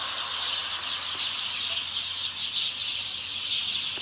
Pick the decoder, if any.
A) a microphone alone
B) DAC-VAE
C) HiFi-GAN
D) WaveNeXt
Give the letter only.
A